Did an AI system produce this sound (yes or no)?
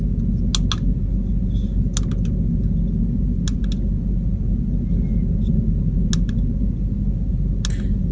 no